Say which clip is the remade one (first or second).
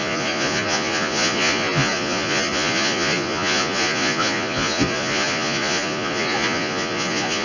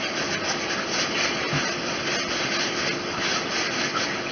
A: first